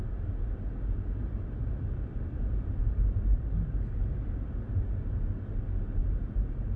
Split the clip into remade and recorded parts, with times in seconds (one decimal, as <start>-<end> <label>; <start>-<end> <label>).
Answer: 0.0-1.2 recorded; 1.2-4.9 remade; 4.9-6.0 recorded; 6.0-6.8 remade